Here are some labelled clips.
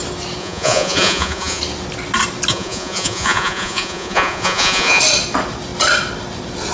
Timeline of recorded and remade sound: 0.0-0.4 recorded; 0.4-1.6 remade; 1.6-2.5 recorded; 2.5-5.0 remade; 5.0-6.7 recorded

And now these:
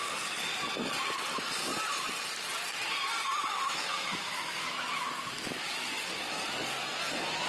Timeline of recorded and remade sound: 0.0-3.4 recorded; 3.4-5.9 remade; 5.9-7.5 recorded

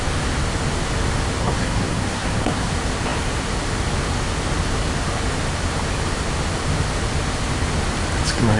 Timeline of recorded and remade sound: 0.0-1.4 recorded; 1.4-2.7 remade; 2.7-8.6 recorded

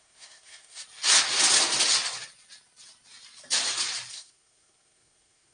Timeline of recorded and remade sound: 0.0-0.8 remade; 0.8-4.1 recorded; 4.1-5.5 remade

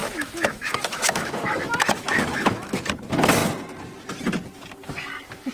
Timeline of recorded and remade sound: 0.0-2.9 remade; 2.9-5.5 recorded

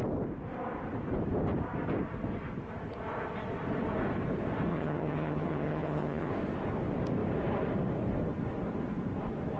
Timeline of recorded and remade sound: 0.0-4.7 recorded; 4.7-6.3 remade; 6.3-9.6 recorded

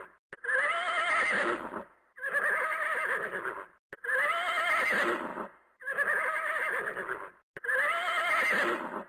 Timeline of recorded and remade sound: 0.0-9.1 recorded